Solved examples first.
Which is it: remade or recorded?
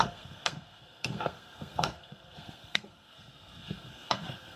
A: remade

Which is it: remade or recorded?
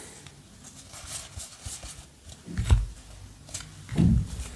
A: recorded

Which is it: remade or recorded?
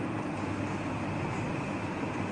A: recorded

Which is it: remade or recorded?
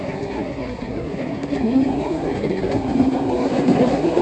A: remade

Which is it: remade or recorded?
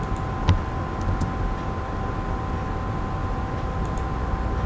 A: recorded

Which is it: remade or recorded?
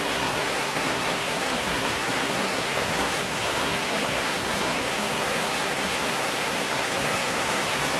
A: remade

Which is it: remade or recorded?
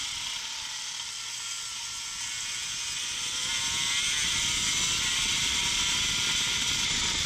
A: recorded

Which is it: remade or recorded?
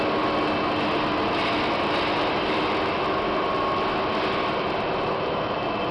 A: recorded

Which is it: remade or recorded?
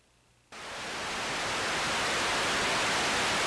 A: recorded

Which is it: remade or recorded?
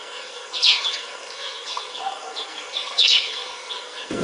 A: remade